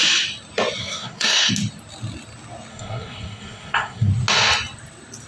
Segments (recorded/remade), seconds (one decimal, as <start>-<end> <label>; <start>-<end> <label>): 0.0-0.8 recorded; 0.8-1.5 remade; 1.5-2.7 recorded; 2.7-4.1 remade; 4.1-5.3 recorded